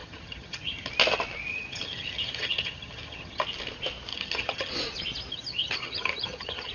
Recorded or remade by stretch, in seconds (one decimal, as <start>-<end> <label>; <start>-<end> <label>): 0.0-0.9 remade; 0.9-1.5 recorded; 1.5-3.4 remade; 3.4-4.1 recorded; 4.1-4.7 remade; 4.7-5.3 recorded; 5.3-6.7 remade